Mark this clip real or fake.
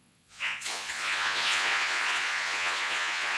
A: fake